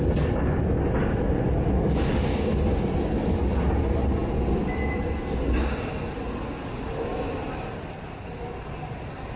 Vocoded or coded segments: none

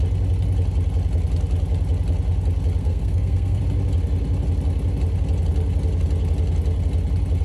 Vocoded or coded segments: 2.8-3.6 (codec, SNAC)

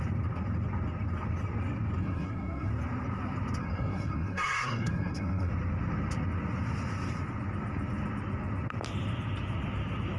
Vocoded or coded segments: 2.0-2.7 (codec, SNAC); 3.6-5.5